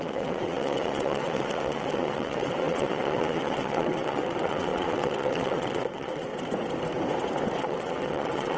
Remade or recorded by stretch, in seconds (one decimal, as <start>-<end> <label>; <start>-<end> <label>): 0.0-6.3 remade; 6.3-7.6 recorded; 7.6-8.6 remade